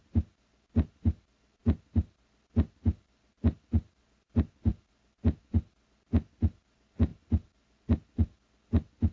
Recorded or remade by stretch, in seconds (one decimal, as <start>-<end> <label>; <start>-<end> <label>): 0.0-9.1 recorded